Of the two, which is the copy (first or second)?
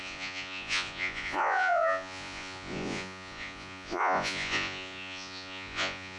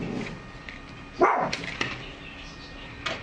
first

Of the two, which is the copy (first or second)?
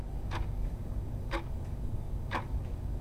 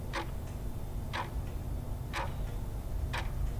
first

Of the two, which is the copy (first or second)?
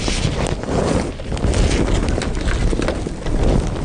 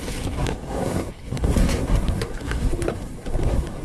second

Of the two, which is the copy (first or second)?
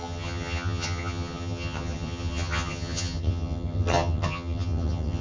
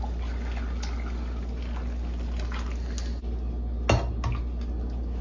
first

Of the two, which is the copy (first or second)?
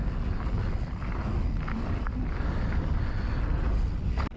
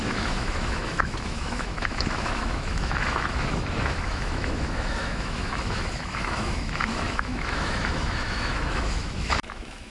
second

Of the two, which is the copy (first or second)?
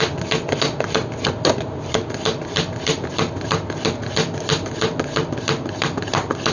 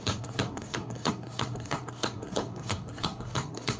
second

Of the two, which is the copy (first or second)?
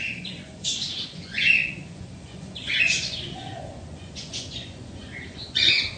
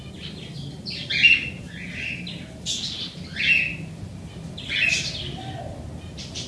first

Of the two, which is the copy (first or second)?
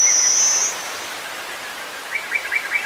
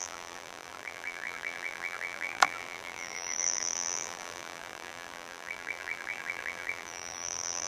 second